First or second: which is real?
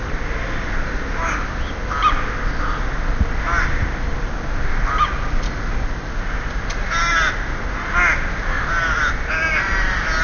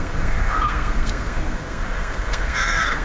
first